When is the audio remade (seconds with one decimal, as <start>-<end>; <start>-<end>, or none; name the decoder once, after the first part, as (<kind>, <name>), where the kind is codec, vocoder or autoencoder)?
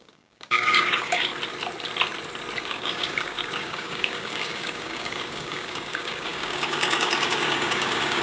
0.0-1.3 (codec, DAC); 2.6-8.2